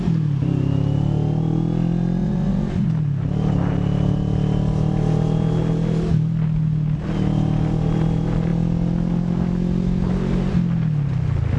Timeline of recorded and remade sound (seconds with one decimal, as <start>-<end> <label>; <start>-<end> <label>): 0.0-2.2 recorded; 2.2-2.9 remade; 2.9-11.6 recorded